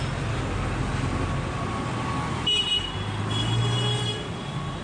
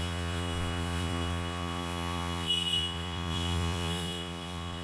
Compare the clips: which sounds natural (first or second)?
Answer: first